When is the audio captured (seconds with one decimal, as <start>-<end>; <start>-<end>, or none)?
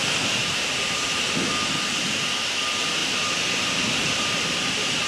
0.0-0.4; 1.2-3.0